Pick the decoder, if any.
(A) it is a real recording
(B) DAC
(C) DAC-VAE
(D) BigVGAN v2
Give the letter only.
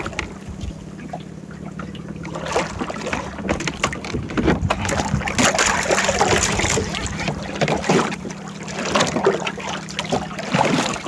A